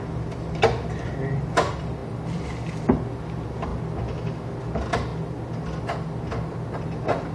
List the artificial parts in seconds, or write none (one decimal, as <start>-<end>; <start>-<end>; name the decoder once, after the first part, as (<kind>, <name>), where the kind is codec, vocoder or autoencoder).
0.0-3.7 (vocoder, BigVGAN v2); 4.6-5.1; 6.7-7.3